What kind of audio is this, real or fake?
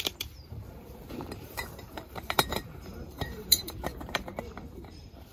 fake